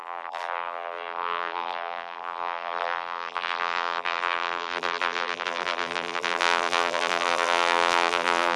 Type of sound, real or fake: fake